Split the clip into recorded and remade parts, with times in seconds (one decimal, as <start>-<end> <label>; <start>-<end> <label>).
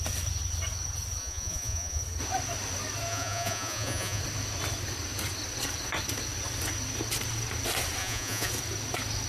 0.0-1.2 recorded; 1.2-2.0 remade; 2.0-3.1 recorded; 3.1-4.2 remade; 4.2-8.0 recorded; 8.0-8.5 remade; 8.5-9.3 recorded